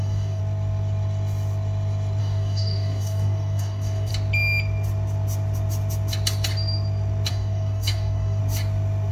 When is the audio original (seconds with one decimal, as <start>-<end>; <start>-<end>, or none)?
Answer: 0.4-2.2; 4.1-7.3; 8.4-9.1